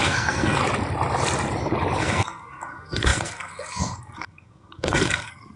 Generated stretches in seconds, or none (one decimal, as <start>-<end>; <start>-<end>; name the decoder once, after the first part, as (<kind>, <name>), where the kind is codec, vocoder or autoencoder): 0.0-0.6 (codec, SNAC); 2.0-5.6